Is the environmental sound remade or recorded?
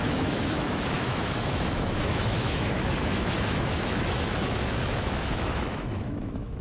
remade